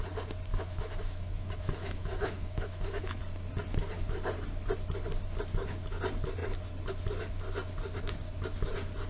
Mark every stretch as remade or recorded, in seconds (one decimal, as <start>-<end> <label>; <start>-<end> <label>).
0.0-0.5 recorded; 0.5-3.2 remade; 3.2-9.1 recorded